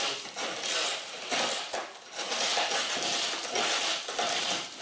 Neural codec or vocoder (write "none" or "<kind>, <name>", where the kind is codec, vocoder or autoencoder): none